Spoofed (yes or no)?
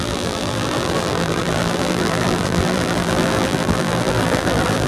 yes